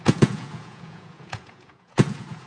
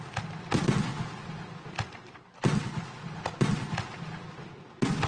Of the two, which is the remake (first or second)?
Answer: first